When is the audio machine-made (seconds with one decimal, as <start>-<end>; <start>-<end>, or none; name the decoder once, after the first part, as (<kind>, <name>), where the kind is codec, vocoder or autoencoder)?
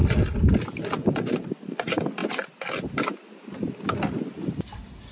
none